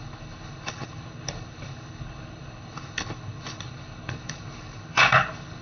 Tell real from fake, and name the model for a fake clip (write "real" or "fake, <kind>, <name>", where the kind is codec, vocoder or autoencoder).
fake, codec, HILCodec